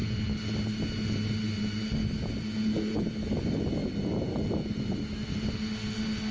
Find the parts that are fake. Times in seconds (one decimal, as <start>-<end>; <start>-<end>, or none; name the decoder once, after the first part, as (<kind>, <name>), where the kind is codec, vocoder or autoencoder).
none